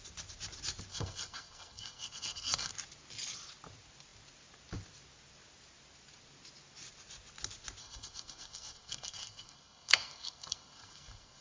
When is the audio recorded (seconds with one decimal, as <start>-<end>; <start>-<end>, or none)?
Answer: 0.0-0.9; 2.7-7.8